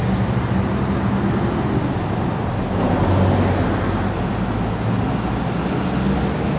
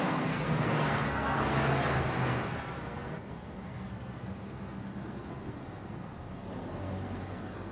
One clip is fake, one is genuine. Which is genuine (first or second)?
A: first